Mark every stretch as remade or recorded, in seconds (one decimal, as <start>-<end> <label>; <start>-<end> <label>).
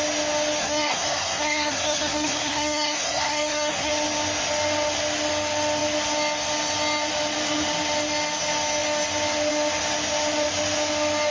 0.0-0.6 recorded; 0.6-3.9 remade; 3.9-11.3 recorded